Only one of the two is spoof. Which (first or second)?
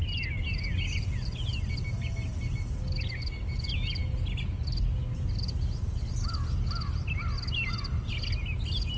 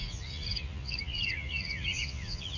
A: second